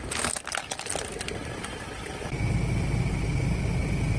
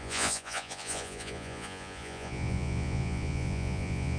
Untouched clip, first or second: first